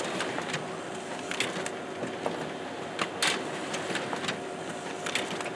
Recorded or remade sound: recorded